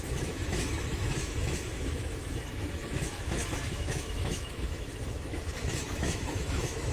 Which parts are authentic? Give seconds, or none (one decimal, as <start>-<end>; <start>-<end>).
none